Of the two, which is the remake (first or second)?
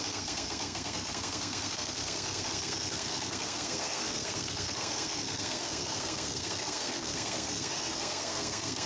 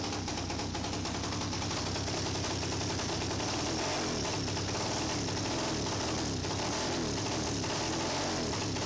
first